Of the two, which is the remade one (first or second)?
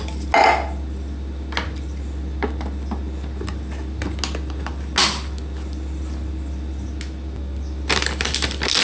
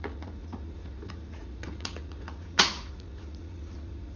second